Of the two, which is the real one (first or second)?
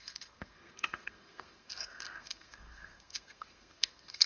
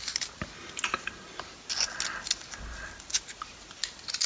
second